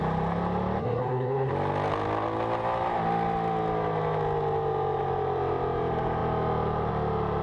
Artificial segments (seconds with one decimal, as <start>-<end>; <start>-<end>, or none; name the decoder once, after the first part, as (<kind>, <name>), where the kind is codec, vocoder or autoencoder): 0.8-1.5 (codec, SNAC)